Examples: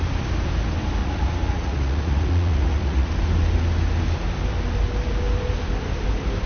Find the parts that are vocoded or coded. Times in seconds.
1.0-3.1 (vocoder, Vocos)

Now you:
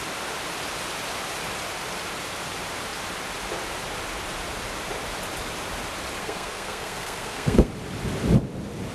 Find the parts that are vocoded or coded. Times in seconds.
6.2-7.7 (codec, SNAC)

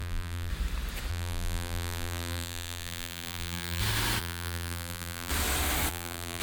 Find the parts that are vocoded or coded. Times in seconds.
0.0-0.5 (vocoder, BigVGAN v2); 1.1-3.8; 4.2-5.3; 5.9-6.4

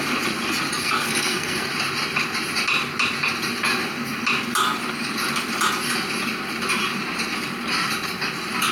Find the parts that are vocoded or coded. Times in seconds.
0.7-1.7 (codec, SNAC)

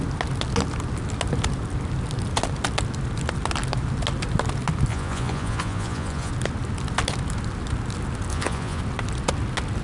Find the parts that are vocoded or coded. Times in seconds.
4.9-6.3 (vocoder, Vocos); 8.3-8.8